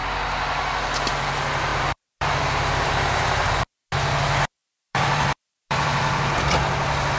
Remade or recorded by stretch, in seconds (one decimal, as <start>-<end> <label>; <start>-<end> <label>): 0.0-1.7 recorded; 1.7-3.5 remade; 3.5-4.6 recorded; 4.6-6.4 remade; 6.4-7.2 recorded